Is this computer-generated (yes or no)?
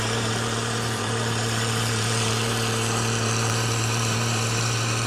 yes